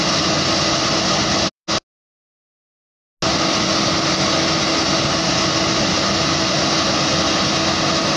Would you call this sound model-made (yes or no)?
no